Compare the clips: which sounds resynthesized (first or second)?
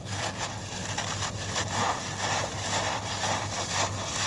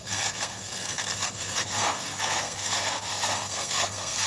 second